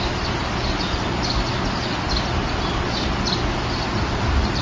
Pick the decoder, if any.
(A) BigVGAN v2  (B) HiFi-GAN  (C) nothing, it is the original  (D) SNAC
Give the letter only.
C